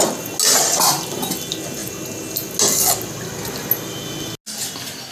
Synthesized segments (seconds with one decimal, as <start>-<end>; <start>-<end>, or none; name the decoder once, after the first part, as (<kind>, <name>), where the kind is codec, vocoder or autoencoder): none